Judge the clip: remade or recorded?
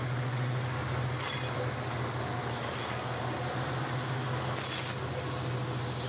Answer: recorded